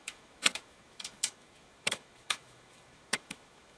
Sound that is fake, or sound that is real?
fake